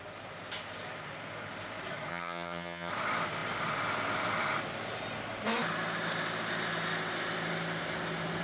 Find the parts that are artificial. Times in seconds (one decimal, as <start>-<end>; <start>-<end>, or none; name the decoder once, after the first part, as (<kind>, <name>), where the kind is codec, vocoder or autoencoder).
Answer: 2.1-2.9 (vocoder, HiFi-GAN)